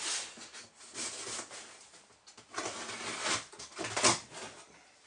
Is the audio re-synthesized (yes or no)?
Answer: no